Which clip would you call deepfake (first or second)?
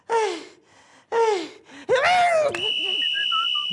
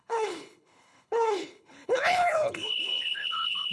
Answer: second